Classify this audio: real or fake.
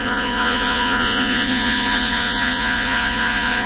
fake